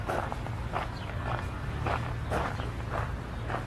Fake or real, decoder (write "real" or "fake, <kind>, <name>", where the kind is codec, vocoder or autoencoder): real